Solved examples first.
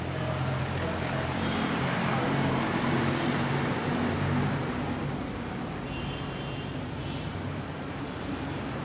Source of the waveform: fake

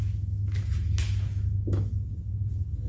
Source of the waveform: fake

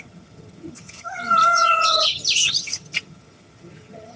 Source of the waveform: fake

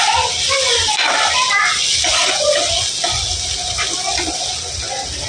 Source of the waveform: real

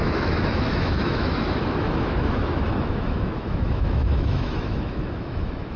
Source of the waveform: fake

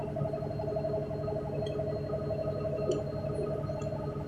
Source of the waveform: real